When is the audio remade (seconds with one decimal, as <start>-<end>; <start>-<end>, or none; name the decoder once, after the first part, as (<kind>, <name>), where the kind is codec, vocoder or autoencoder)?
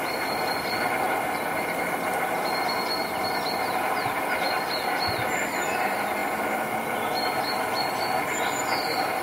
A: none